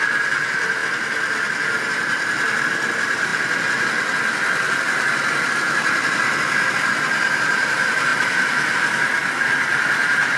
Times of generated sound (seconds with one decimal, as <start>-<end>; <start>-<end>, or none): none